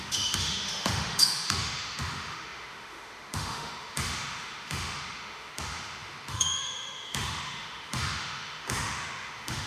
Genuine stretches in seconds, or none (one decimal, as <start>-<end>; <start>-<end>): none